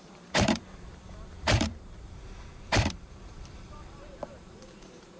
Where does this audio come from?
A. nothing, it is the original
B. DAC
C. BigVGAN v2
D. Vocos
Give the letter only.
C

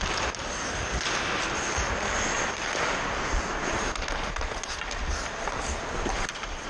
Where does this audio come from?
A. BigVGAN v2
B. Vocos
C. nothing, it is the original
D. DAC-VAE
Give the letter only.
C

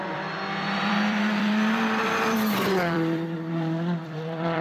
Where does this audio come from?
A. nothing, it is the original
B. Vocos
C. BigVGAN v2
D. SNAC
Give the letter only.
C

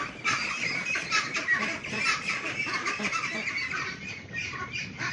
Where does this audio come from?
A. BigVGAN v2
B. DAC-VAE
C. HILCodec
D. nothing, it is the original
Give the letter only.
A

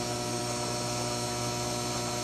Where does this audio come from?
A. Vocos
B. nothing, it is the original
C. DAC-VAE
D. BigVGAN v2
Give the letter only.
B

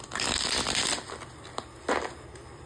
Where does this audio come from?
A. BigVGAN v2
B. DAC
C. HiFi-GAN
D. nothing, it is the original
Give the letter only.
D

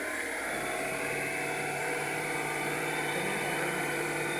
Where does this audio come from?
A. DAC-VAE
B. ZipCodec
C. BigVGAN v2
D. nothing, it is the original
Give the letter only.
C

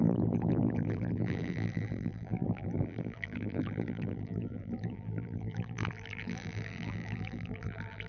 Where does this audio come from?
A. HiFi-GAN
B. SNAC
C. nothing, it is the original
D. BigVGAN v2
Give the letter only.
D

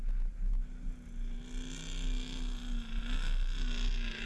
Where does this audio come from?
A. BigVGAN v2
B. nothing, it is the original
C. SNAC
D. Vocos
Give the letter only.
B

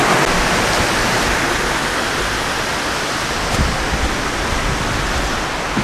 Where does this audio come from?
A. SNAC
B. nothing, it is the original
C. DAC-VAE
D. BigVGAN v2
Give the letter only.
B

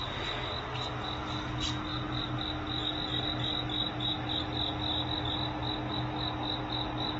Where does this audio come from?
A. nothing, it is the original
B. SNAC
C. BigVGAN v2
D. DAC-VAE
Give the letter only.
A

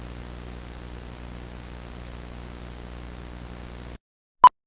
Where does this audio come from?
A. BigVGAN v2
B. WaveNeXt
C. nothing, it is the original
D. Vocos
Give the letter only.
C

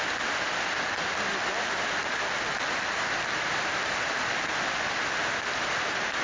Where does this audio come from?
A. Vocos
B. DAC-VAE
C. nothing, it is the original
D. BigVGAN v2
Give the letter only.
C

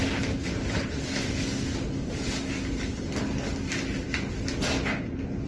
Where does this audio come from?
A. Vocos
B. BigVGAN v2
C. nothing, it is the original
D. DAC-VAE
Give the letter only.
C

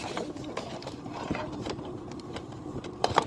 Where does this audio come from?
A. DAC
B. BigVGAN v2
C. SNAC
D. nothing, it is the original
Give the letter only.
B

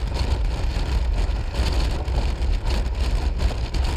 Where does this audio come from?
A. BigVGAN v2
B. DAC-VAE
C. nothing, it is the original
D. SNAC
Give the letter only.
C